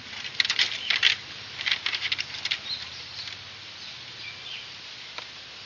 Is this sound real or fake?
real